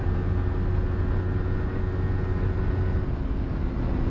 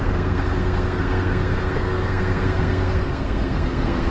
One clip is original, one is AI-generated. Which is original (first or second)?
first